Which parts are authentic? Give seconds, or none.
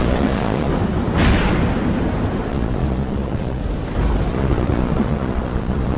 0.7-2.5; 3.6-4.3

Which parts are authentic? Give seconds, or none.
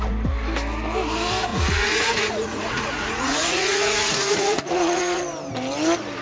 0.0-1.5; 5.2-6.2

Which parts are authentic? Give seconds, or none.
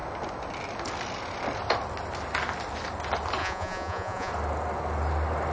0.0-3.4; 4.3-5.5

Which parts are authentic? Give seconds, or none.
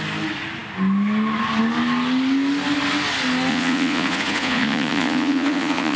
0.0-3.5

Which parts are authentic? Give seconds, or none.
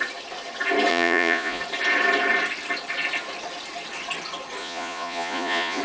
0.0-0.9; 1.6-4.6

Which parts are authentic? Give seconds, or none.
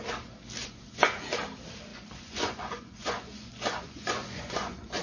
0.0-0.6; 1.3-1.9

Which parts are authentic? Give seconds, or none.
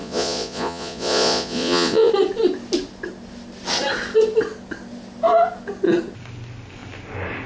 2.1-7.5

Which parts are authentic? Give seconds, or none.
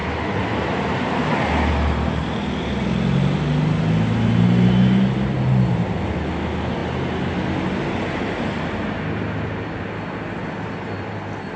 0.0-11.6